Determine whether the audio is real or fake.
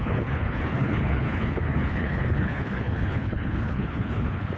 fake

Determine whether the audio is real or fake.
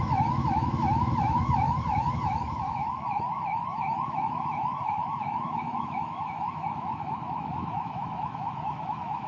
fake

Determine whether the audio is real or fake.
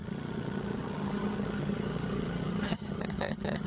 fake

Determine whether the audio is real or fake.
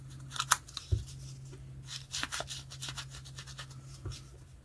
real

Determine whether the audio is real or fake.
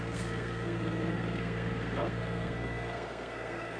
fake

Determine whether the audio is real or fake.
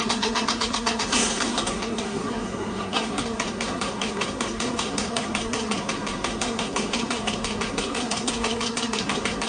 fake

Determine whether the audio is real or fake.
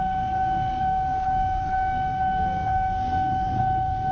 fake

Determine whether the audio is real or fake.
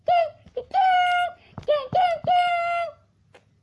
fake